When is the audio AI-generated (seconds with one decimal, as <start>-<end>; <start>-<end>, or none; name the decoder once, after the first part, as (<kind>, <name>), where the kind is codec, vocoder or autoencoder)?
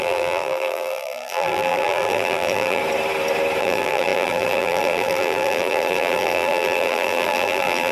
0.0-2.8 (vocoder, BigVGAN v2); 3.6-7.9